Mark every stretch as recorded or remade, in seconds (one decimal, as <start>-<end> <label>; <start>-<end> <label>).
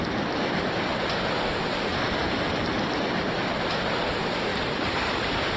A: 0.0-1.9 recorded; 1.9-4.1 remade; 4.1-4.5 recorded; 4.5-5.6 remade